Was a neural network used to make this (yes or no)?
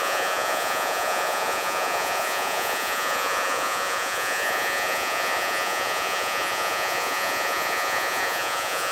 yes